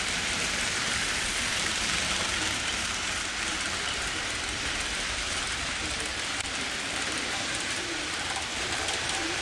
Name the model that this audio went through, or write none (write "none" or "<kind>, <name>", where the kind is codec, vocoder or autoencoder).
vocoder, BigVGAN v2